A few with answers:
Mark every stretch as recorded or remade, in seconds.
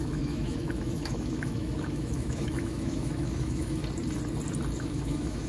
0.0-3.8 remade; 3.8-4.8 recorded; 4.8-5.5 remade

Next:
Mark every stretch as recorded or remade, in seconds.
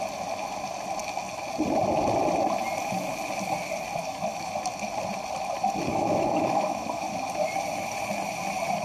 0.0-4.0 recorded; 4.0-4.5 remade; 4.5-5.9 recorded; 5.9-7.1 remade; 7.1-8.8 recorded